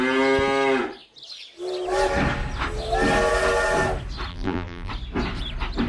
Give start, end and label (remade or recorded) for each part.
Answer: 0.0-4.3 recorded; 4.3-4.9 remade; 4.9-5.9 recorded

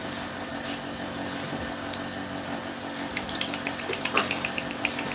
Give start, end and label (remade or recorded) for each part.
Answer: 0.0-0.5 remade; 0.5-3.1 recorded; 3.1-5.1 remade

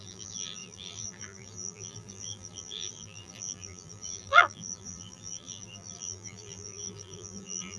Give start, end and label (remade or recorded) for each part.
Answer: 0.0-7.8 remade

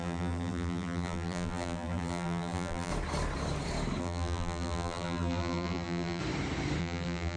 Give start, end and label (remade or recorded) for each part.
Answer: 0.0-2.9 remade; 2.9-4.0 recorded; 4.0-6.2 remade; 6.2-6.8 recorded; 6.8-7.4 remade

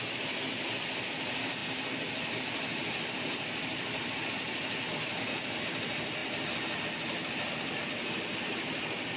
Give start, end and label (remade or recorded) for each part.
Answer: 0.0-1.6 recorded; 1.6-5.2 remade; 5.2-9.2 recorded